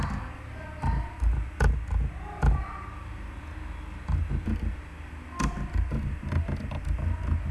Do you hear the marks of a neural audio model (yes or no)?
no